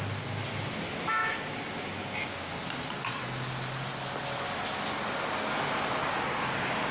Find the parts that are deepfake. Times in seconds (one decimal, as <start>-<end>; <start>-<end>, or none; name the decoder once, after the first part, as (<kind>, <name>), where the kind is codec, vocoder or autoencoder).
1.2-2.5 (codec, DAC); 6.0-6.9